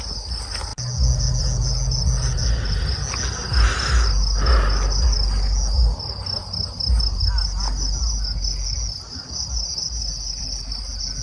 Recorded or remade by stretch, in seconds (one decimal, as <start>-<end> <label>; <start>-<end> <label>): 0.0-11.2 recorded

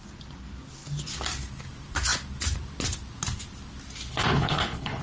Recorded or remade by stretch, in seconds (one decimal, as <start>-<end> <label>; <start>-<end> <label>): 0.0-4.1 recorded; 4.1-5.0 remade